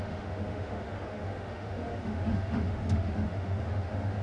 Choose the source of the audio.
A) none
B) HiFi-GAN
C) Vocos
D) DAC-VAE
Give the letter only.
D